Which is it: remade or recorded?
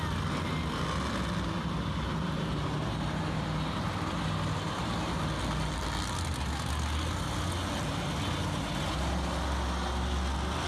recorded